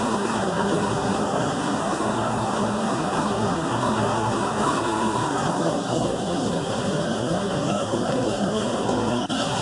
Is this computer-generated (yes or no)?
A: yes